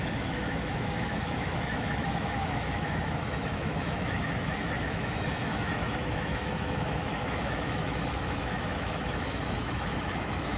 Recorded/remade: remade